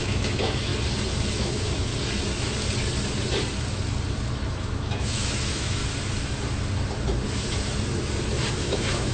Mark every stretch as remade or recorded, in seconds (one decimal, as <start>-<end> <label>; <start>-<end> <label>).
0.0-0.7 remade; 0.7-1.3 recorded; 1.3-1.9 remade; 1.9-4.5 recorded; 4.5-5.8 remade; 5.8-8.5 recorded; 8.5-9.1 remade